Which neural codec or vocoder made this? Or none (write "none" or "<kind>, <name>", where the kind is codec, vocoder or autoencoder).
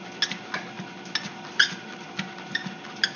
none